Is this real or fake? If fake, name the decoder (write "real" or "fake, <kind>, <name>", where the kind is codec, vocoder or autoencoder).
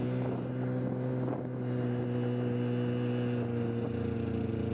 real